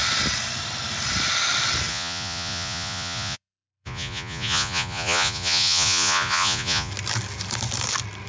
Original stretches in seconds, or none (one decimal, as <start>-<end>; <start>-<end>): 0.0-1.9; 6.9-8.3